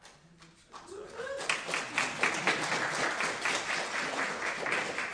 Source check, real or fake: real